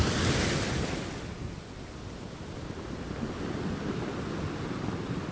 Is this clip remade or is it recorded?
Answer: recorded